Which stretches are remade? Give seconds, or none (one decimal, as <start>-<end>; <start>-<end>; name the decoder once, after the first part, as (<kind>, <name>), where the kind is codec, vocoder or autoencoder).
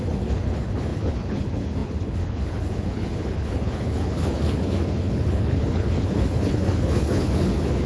0.0-7.9 (codec, HILCodec)